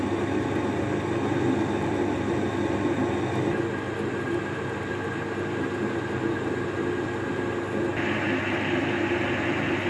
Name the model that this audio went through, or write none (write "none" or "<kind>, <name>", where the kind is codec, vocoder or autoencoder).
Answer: none